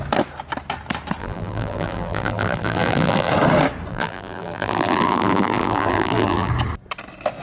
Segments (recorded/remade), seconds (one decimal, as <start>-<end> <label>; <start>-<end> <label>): 0.0-1.2 recorded; 1.2-3.3 remade; 3.3-3.9 recorded; 3.9-6.5 remade; 6.5-7.4 recorded